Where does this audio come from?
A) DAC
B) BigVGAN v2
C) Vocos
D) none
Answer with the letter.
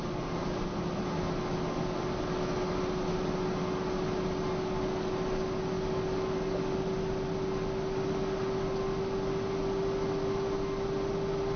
D